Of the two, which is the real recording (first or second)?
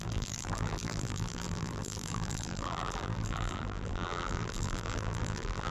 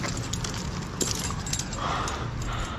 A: second